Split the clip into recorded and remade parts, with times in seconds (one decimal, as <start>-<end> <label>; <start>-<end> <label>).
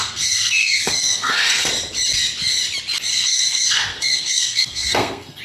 0.0-1.7 remade; 1.7-3.1 recorded; 3.1-5.4 remade